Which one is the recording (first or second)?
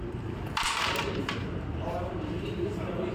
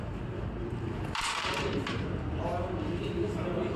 second